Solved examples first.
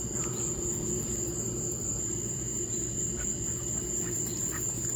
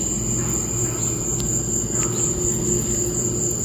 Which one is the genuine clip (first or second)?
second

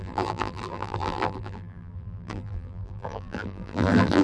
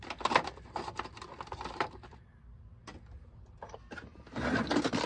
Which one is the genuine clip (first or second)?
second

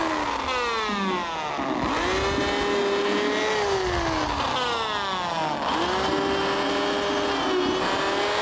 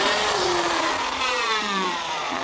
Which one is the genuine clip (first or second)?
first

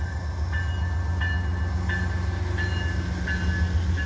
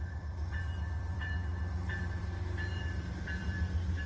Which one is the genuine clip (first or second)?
first